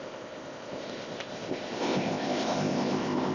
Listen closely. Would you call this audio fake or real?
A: fake